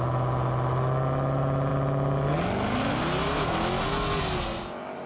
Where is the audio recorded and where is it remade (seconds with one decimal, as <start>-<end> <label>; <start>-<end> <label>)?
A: 0.0-5.1 recorded